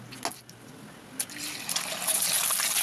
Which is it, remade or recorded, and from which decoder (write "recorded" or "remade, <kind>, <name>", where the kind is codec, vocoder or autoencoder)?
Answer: recorded